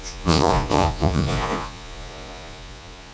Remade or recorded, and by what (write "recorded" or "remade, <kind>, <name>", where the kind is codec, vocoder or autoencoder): remade, vocoder, Vocos